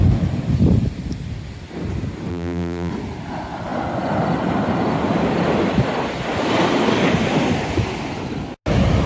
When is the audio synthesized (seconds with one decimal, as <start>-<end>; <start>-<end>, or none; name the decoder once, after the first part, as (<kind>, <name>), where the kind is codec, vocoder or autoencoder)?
2.3-2.9 (vocoder, BigVGAN v2)